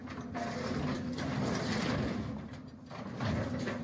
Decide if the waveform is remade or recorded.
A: recorded